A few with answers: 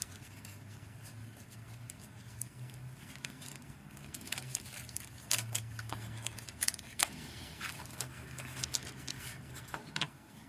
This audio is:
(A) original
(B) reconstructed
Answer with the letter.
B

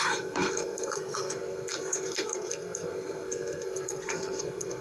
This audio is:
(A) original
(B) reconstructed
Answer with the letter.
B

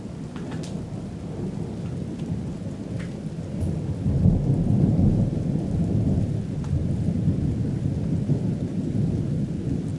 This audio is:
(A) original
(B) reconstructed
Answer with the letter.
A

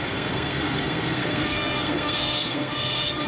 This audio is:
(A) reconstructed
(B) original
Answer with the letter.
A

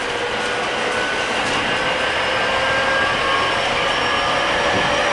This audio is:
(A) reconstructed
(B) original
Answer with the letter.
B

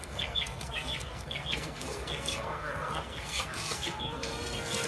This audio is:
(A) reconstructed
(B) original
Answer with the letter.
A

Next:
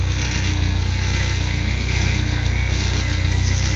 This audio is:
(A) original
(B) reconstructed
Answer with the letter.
B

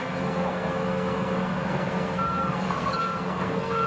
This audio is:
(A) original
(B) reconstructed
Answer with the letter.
B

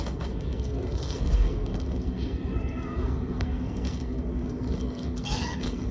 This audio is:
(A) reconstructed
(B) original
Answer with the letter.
A